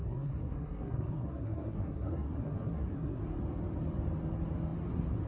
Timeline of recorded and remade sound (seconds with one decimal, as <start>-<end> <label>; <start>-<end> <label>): 0.0-3.2 remade; 3.2-5.3 recorded